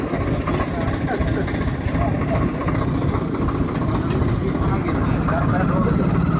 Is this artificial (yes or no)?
no